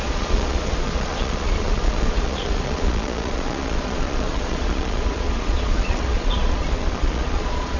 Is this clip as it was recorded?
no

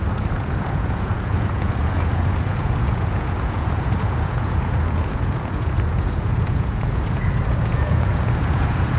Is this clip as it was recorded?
no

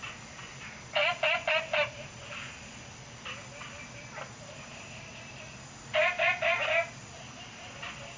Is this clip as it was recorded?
yes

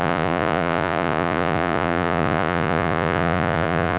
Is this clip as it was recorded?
no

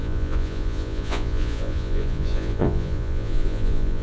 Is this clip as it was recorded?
no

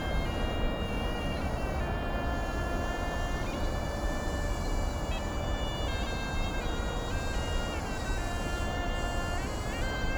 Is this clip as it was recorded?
yes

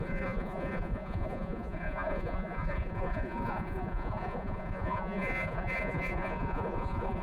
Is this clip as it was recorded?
no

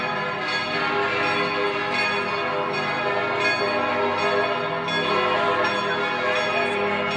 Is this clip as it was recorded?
yes